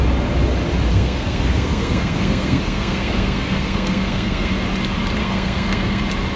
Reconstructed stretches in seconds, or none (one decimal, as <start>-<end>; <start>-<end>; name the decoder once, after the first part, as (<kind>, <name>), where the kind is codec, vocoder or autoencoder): 0.9-4.5 (codec, SNAC); 5.2-6.0